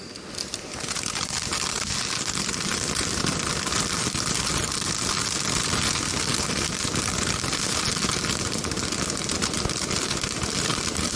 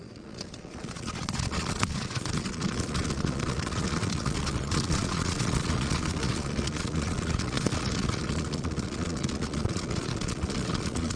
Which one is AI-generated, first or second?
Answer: second